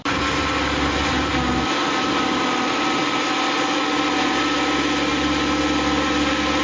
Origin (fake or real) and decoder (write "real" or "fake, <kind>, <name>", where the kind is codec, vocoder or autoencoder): real